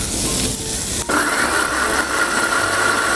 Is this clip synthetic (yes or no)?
no